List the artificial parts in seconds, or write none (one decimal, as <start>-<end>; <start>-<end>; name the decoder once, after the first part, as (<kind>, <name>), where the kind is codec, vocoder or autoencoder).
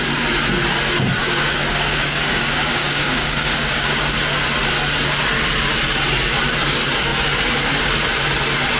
1.2-4.2 (codec, DAC)